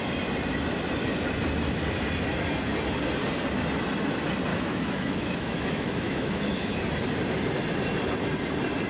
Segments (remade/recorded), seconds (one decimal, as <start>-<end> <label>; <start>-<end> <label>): 0.0-4.5 recorded; 4.5-6.8 remade; 6.8-8.9 recorded